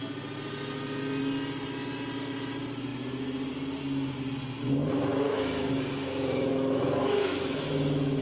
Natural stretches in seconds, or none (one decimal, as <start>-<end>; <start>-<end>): 0.0-5.1